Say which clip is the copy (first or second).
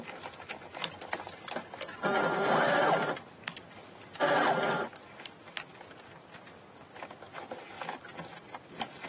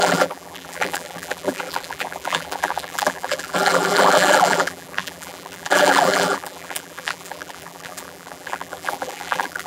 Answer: second